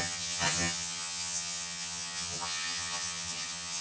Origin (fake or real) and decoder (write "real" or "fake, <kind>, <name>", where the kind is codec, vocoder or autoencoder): fake, vocoder, HiFi-GAN